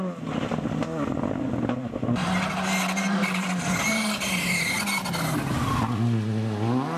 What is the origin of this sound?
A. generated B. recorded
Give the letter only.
B